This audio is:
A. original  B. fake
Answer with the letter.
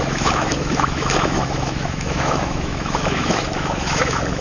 B